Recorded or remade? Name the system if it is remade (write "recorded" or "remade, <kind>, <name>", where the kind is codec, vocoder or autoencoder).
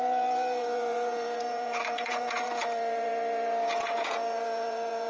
remade, vocoder, Vocos